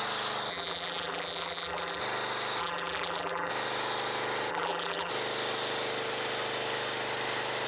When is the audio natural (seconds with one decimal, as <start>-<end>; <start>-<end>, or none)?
0.0-0.5; 2.0-2.6; 3.5-4.5; 5.1-7.7